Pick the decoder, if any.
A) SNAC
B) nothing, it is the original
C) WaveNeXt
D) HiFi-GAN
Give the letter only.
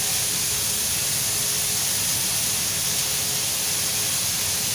B